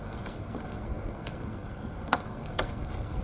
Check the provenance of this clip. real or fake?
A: fake